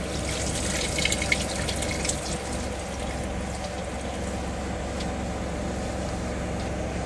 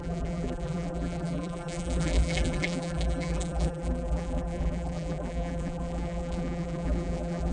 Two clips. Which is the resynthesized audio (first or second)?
second